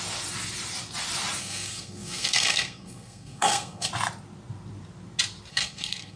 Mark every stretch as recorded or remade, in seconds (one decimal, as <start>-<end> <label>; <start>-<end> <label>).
0.0-1.4 recorded; 1.4-3.9 remade; 3.9-5.5 recorded; 5.5-6.2 remade

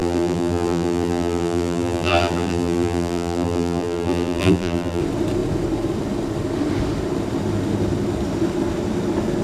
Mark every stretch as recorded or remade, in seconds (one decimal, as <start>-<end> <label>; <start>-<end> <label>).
0.0-5.0 remade; 5.0-9.4 recorded